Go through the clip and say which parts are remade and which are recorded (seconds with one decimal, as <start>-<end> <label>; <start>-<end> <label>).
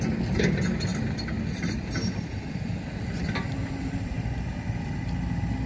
0.0-5.7 recorded